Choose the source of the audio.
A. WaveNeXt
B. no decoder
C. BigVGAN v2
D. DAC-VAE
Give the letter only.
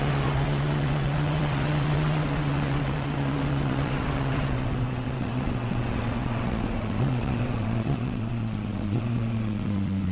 A